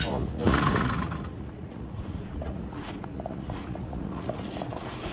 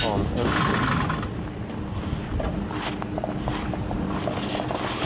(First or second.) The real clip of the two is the second